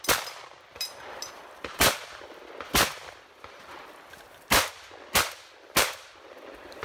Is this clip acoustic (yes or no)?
no